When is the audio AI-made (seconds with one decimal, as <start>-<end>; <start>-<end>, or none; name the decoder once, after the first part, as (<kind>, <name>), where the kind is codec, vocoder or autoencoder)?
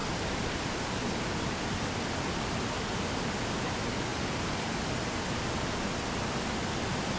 none